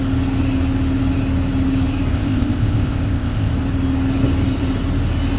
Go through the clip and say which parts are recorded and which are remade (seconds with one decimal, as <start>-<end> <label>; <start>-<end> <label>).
0.0-2.1 recorded; 2.1-3.5 remade; 3.5-5.4 recorded